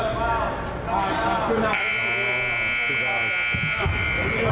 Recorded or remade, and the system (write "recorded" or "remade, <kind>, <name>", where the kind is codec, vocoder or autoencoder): recorded